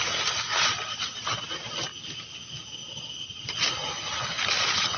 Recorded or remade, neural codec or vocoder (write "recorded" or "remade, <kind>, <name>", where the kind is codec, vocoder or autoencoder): recorded